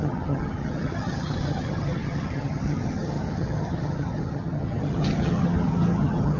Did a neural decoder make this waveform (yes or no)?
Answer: yes